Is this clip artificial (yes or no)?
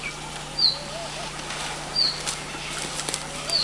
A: no